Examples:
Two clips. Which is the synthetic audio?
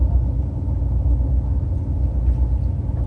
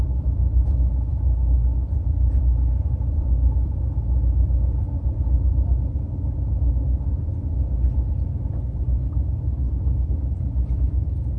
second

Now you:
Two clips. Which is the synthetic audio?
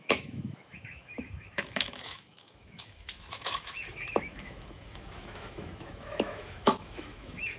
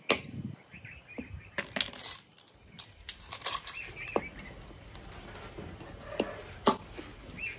first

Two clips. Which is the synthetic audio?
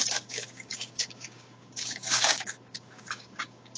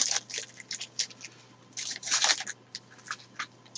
first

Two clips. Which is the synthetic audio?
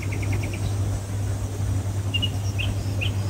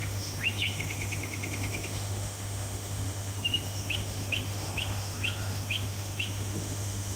second